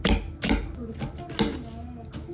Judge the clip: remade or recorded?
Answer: recorded